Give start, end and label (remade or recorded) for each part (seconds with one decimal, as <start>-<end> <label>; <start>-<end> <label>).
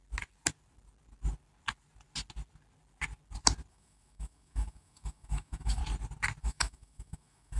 0.0-3.7 recorded; 3.7-5.8 remade; 5.8-6.4 recorded; 6.4-7.6 remade